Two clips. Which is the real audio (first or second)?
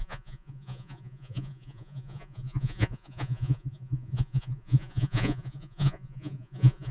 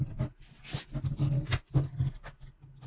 second